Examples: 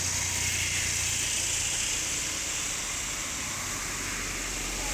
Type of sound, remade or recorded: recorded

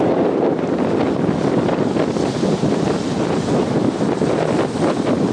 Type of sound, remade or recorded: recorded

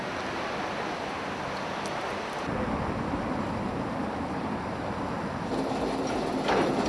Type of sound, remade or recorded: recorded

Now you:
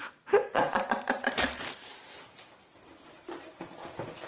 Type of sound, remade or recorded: remade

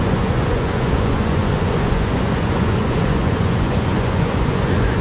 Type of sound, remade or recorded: remade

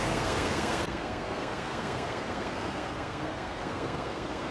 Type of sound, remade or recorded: remade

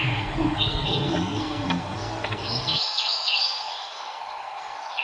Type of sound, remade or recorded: remade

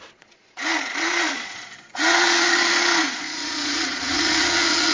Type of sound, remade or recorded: remade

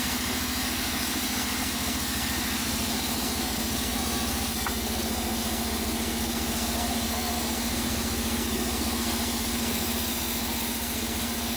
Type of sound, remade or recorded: remade